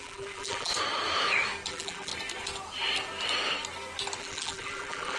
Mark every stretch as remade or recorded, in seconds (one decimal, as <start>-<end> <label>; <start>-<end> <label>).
0.0-0.7 remade; 0.7-1.7 recorded; 1.7-2.1 remade; 2.1-4.2 recorded; 4.2-5.2 remade